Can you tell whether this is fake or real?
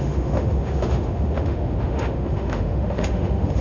fake